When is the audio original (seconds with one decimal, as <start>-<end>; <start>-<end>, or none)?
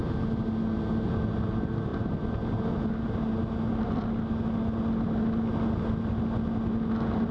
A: 0.0-7.3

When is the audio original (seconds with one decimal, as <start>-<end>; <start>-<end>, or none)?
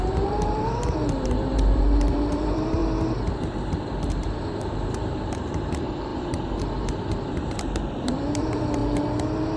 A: 2.8-4.0; 8.8-9.6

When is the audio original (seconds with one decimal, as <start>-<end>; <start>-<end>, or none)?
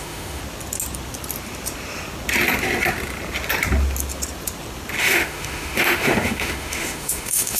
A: 0.4-5.0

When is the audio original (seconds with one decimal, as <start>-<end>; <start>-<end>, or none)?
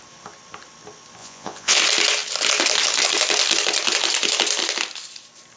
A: 0.0-1.2; 1.8-5.6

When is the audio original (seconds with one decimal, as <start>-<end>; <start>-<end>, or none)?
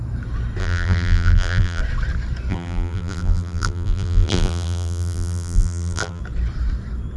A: 0.0-0.6; 1.8-2.5; 6.2-7.2